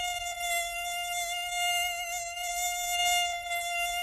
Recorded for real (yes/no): yes